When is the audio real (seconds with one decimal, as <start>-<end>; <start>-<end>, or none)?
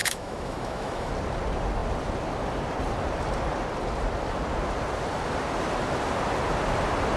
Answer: 1.1-7.2